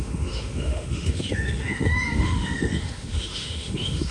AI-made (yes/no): yes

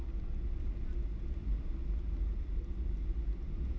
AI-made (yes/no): no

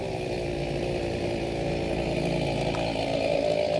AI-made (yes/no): no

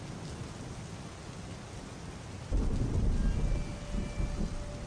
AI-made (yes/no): no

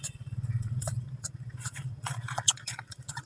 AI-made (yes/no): yes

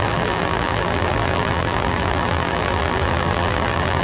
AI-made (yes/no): yes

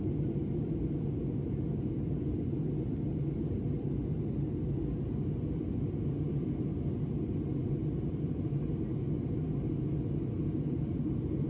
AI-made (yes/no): no